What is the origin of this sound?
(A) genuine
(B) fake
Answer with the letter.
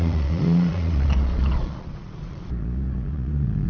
B